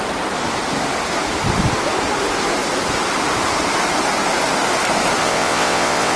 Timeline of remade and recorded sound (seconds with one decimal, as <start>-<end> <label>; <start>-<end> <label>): 0.0-5.2 recorded; 5.2-6.2 remade